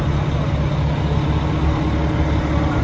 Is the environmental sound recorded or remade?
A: recorded